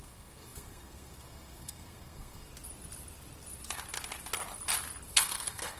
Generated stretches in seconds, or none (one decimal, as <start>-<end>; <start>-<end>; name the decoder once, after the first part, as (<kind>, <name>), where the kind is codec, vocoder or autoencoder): 0.0-2.5 (codec, SNAC); 5.1-5.8